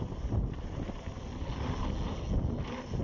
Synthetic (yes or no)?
no